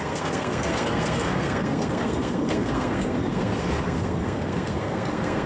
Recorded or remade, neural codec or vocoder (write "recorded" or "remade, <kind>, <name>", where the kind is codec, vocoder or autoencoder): remade, codec, SNAC